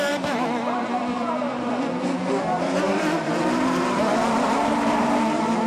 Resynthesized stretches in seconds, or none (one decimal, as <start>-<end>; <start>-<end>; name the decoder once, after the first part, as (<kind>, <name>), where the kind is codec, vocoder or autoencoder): 0.0-5.7 (vocoder, BigVGAN v2)

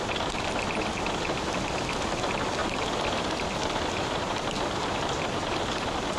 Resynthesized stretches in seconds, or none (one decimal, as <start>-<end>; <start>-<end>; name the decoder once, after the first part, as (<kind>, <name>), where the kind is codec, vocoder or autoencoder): none